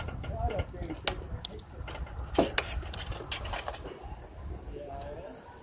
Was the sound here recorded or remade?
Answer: recorded